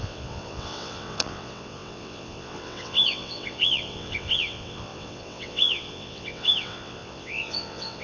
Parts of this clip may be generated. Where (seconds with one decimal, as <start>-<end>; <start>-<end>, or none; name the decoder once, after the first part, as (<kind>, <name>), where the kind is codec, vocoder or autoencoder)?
0.0-8.0 (vocoder, WaveNeXt)